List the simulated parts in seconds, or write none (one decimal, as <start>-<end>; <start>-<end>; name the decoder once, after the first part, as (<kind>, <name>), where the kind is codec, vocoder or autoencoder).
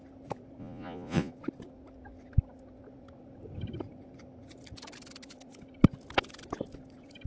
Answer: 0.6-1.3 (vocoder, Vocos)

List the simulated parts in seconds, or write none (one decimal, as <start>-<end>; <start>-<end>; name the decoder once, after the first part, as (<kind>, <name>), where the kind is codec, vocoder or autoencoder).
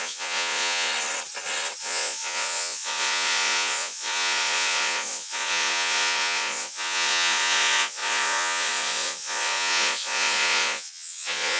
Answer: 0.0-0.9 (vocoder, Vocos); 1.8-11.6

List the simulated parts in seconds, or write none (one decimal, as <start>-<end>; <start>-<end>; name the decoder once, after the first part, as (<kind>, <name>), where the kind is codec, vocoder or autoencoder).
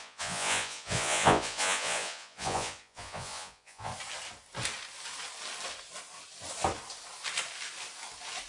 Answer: 0.0-3.9 (vocoder, Vocos)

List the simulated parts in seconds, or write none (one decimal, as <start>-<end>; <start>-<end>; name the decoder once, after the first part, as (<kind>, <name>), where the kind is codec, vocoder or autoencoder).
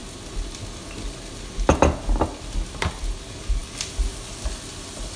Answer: none